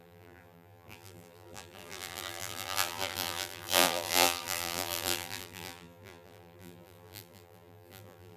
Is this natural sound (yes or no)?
no